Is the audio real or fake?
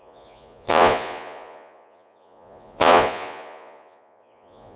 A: fake